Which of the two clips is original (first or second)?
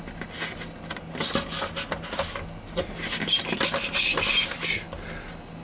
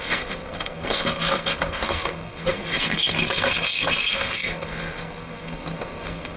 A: first